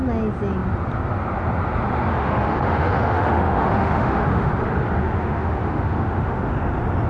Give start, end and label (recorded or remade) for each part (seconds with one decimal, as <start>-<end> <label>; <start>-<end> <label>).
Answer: 0.0-2.1 recorded; 2.1-4.5 remade; 4.5-5.0 recorded; 5.0-6.5 remade; 6.5-7.1 recorded